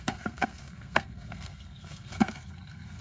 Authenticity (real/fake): fake